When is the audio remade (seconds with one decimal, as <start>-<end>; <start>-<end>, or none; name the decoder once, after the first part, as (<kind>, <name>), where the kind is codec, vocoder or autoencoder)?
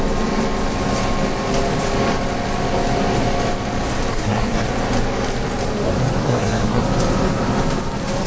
4.1-4.7 (codec, SNAC); 6.2-6.8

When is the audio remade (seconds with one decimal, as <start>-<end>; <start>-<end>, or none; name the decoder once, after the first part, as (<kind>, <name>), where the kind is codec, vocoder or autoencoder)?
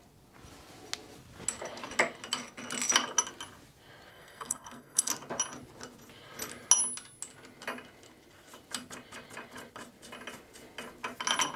4.1-5.1 (codec, SNAC)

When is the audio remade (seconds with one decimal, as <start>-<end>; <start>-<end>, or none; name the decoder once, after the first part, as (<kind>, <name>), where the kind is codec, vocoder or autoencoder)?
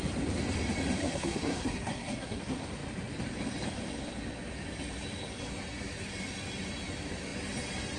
1.0-2.4 (codec, SNAC)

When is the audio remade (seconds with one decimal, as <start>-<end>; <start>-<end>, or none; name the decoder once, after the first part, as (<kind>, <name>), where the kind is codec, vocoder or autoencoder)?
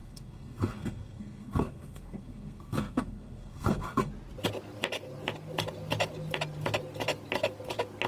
0.0-4.1 (codec, SNAC)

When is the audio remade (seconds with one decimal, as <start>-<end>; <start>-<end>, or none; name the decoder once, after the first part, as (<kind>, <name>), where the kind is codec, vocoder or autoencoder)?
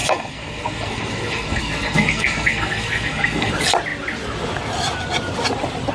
0.0-3.5 (codec, SNAC)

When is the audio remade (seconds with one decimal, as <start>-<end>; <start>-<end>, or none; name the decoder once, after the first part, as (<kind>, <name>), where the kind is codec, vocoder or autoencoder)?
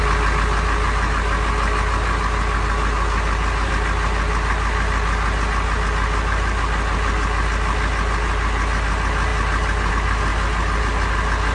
none